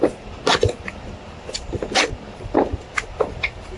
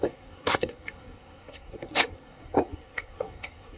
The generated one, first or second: second